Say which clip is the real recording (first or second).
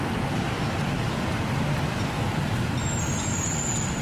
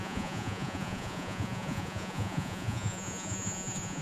first